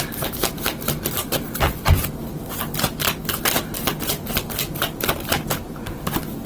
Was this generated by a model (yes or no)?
no